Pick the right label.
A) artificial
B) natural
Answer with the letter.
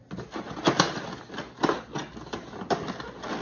B